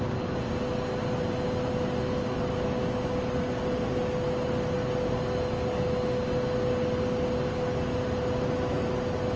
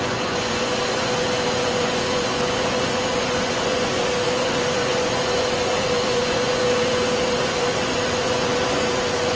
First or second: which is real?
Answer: first